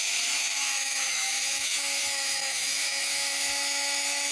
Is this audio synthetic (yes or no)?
yes